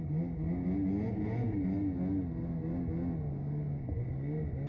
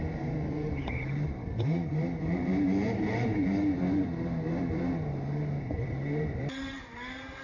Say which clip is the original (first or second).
first